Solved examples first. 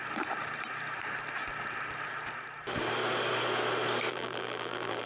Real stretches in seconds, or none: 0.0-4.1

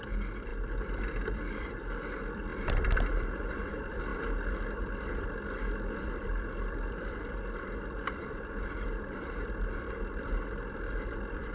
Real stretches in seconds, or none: 4.1-4.8

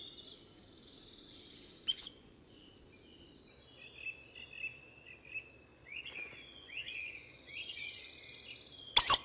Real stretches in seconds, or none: 0.0-1.9; 2.7-5.7; 8.1-9.2